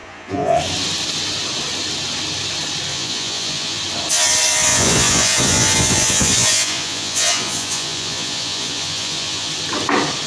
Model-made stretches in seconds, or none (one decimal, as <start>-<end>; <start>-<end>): 0.0-0.6; 2.9-3.8; 4.7-9.5